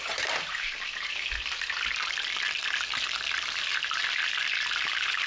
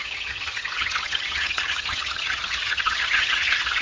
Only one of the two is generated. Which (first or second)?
second